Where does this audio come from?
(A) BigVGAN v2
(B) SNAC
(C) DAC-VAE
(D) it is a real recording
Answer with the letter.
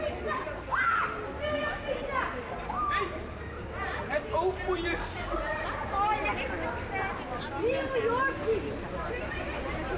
D